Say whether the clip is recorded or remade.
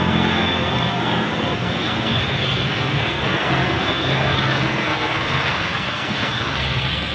remade